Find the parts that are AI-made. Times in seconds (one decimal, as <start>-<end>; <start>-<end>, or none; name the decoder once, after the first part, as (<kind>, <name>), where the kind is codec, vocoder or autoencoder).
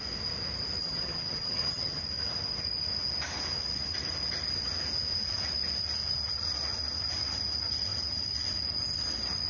0.8-2.0 (vocoder, HiFi-GAN)